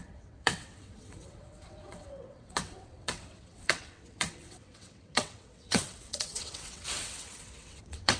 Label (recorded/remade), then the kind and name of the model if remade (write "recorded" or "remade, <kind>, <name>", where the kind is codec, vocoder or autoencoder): remade, vocoder, WaveNeXt